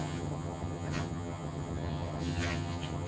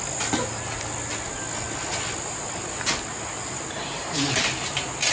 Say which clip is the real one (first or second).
second